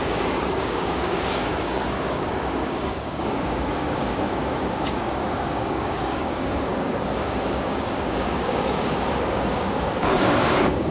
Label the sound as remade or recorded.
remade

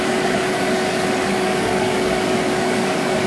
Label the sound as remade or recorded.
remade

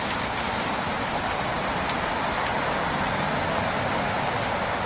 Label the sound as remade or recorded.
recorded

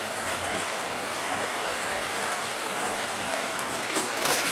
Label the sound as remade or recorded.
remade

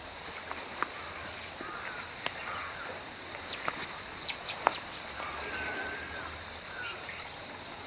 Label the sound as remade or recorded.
recorded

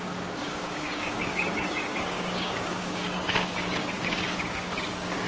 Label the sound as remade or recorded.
remade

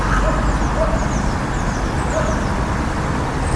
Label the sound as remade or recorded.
recorded